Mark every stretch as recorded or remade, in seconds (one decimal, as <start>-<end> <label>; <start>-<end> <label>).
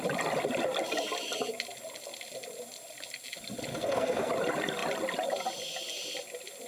0.0-3.7 recorded; 3.7-4.3 remade; 4.3-6.7 recorded